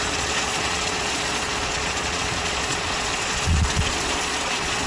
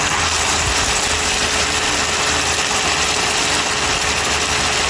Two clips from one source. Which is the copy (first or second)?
first